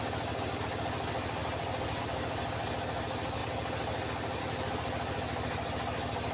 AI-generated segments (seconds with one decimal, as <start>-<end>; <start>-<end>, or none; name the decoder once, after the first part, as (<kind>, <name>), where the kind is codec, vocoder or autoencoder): none